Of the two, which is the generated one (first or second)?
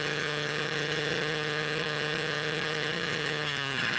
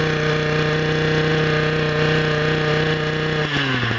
first